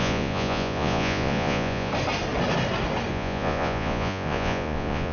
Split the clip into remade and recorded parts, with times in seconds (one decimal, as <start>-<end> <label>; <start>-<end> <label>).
0.0-1.9 remade; 1.9-3.1 recorded; 3.1-5.1 remade